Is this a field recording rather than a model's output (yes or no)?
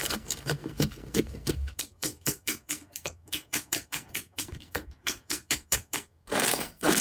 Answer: no